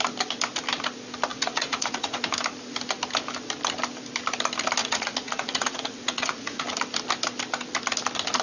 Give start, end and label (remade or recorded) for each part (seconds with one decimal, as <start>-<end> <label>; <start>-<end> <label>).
0.0-1.3 recorded; 1.3-2.2 remade; 2.2-4.8 recorded; 4.8-6.6 remade; 6.6-8.4 recorded